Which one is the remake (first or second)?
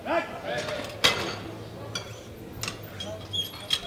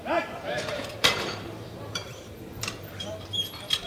second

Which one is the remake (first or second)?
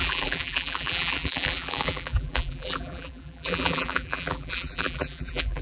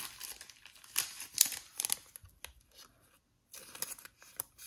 first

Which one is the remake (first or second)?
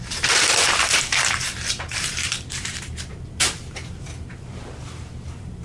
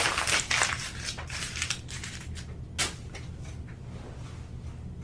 first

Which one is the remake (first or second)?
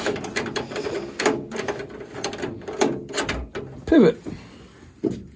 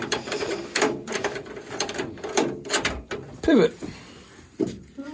second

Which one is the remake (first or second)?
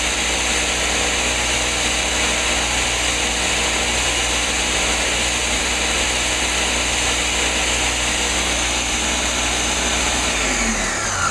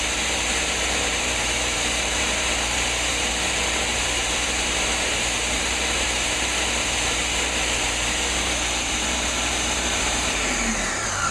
second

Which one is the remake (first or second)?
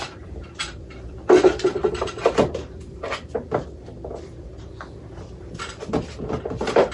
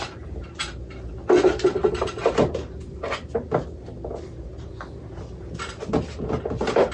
first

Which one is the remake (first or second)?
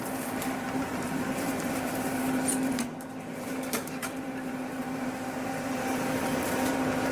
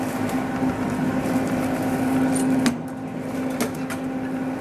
first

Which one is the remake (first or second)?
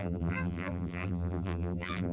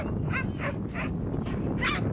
first